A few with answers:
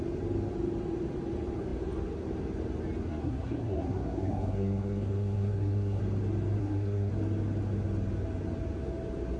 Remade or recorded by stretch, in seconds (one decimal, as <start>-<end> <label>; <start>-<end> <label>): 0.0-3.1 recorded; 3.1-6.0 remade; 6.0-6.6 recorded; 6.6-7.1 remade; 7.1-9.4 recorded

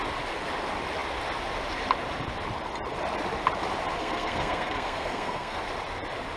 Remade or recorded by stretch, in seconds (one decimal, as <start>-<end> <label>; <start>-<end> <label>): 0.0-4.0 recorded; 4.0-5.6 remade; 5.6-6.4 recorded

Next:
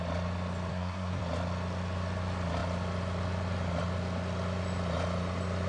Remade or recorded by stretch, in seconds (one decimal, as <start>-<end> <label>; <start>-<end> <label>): 0.0-0.7 recorded; 0.7-1.2 remade; 1.2-5.7 recorded

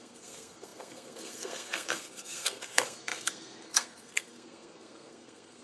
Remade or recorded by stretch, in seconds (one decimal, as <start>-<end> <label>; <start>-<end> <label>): 0.0-5.6 remade